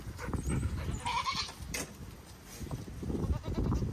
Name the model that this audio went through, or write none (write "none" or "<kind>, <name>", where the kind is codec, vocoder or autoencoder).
none